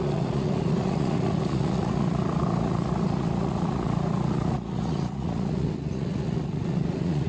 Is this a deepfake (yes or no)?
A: yes